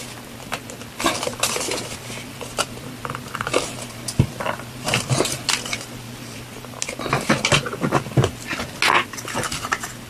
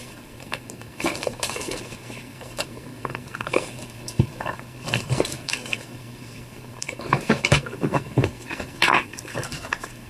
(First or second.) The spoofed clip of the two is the second